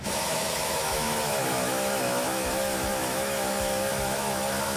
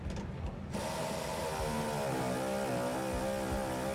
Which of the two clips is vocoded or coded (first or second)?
first